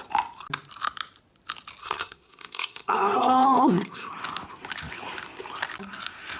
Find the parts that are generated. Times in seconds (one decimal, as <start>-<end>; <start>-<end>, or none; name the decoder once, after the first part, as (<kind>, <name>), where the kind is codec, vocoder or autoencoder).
1.8-4.1 (codec, SNAC)